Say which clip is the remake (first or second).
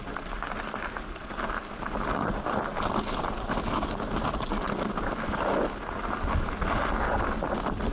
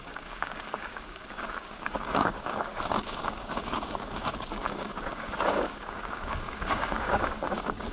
second